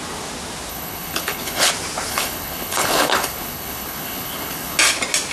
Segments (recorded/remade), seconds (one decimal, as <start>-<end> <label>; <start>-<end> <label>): 0.0-0.7 recorded; 0.7-1.7 remade; 1.7-2.1 recorded; 2.1-4.8 remade; 4.8-5.3 recorded